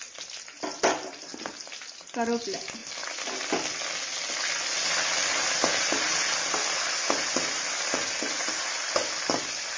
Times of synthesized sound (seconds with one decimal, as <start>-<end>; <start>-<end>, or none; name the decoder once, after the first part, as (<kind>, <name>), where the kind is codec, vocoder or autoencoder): none